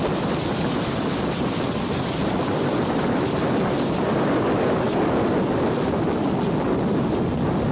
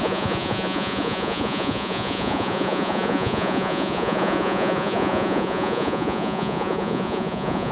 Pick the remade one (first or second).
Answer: second